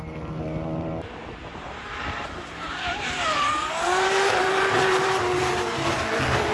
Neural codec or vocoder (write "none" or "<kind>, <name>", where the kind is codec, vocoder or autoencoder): vocoder, BigVGAN v2